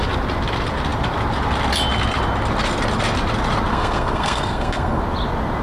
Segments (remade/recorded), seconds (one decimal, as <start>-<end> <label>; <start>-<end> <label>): 0.0-3.7 recorded; 3.7-5.0 remade; 5.0-5.6 recorded